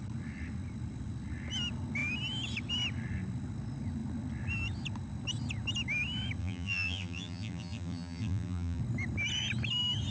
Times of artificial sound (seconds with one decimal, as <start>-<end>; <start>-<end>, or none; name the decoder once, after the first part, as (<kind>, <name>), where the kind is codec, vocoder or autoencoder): 6.4-8.8 (vocoder, BigVGAN v2)